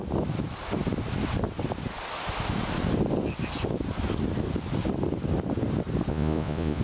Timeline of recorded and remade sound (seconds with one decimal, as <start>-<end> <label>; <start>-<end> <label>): 0.0-6.1 recorded; 6.1-6.8 remade